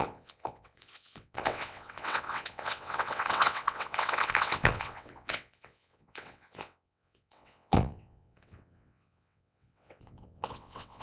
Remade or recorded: remade